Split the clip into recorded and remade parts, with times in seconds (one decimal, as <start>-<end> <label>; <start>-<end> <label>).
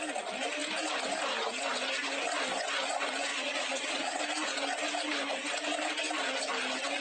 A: 0.0-3.3 recorded; 3.3-4.2 remade; 4.2-7.0 recorded